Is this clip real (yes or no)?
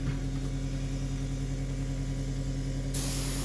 yes